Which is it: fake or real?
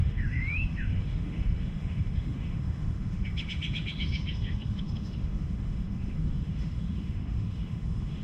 fake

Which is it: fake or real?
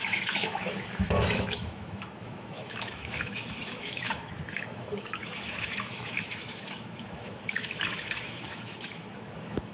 fake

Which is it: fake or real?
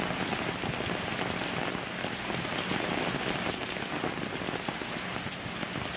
real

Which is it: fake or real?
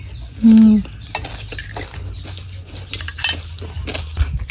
real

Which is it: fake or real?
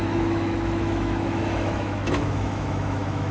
fake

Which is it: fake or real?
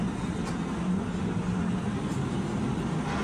real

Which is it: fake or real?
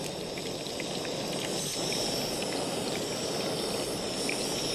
real